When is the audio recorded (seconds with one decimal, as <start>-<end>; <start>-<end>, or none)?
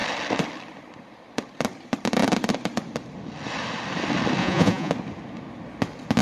0.0-4.4; 4.9-6.2